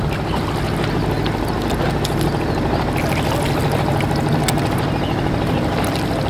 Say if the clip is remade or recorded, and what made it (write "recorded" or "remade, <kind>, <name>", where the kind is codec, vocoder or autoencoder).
recorded